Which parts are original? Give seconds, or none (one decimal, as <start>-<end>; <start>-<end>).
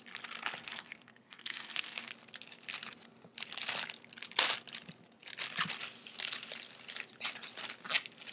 0.0-0.6; 2.1-8.3